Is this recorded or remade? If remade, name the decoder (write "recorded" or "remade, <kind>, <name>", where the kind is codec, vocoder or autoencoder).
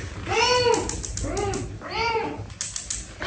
recorded